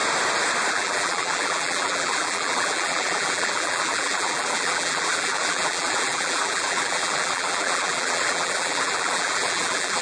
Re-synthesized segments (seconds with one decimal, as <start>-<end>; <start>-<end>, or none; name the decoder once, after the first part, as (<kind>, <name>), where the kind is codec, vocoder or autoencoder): 0.7-10.0 (vocoder, BigVGAN v2)